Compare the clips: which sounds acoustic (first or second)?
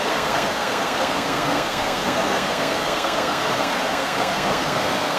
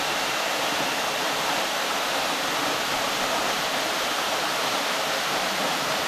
second